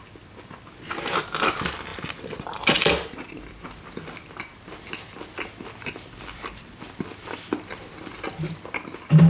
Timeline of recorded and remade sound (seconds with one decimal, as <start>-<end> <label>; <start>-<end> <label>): 0.0-9.3 recorded